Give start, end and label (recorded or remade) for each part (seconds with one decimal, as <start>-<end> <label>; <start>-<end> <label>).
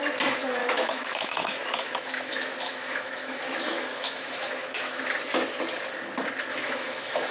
0.0-0.6 recorded; 0.6-5.0 remade; 5.0-6.5 recorded; 6.5-7.3 remade